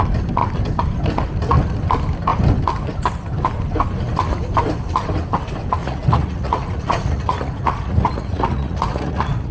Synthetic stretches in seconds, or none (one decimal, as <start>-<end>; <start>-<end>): 5.8-9.5